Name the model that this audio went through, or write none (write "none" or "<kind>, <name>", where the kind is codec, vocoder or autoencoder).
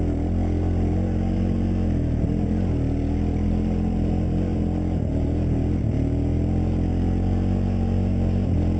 none